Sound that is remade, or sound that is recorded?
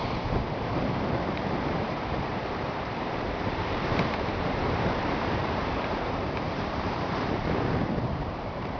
remade